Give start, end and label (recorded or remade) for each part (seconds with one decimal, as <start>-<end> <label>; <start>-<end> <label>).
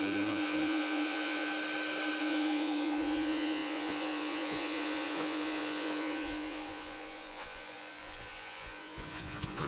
0.0-1.5 remade; 1.5-2.2 recorded; 2.2-9.7 remade